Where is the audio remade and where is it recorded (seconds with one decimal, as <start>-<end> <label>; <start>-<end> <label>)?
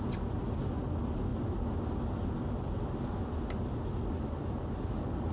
0.0-5.3 recorded